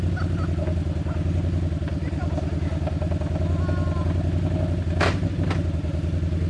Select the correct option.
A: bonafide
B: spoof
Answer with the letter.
A